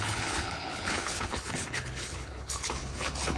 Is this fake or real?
fake